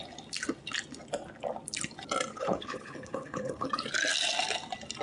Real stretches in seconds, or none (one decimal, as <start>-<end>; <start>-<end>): 0.0-2.3; 3.7-5.0